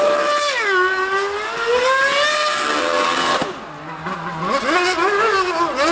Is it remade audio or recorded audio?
recorded